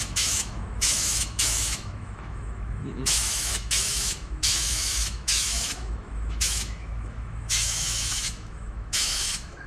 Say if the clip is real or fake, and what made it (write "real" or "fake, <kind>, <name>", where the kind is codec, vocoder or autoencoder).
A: fake, autoencoder, DAC-VAE